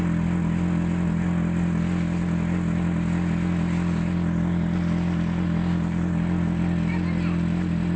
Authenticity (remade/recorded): recorded